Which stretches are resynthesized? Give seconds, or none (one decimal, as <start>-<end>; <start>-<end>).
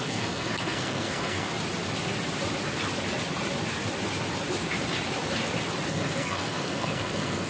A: 0.0-1.5; 5.9-7.5